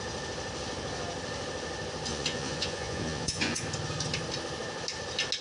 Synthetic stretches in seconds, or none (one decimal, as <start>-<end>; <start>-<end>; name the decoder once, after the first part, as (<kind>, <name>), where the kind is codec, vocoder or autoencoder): 2.1-3.6 (vocoder, Vocos)